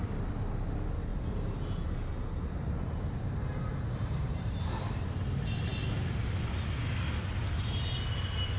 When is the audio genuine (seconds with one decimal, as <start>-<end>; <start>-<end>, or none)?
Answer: 0.0-1.1; 5.1-8.6